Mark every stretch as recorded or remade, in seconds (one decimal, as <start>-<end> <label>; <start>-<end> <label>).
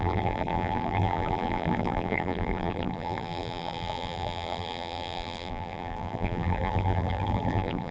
0.0-7.9 remade